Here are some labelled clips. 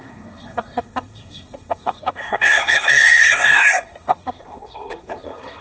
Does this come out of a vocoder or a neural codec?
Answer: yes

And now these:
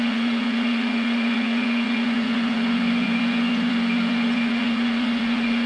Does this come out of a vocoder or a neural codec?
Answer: yes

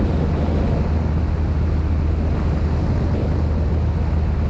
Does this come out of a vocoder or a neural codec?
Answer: no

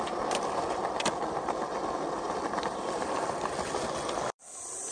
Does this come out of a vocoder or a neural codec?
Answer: yes